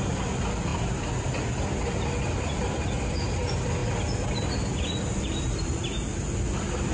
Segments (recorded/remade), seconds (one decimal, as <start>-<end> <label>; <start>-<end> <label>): 0.0-6.9 recorded